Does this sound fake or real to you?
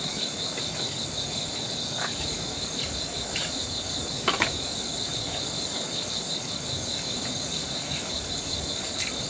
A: fake